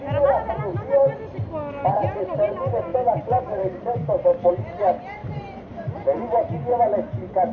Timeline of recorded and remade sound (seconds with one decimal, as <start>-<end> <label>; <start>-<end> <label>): 0.0-1.8 recorded; 1.8-2.5 remade; 2.5-2.9 recorded; 2.9-4.5 remade; 4.5-5.2 recorded; 5.2-5.9 remade; 5.9-7.5 recorded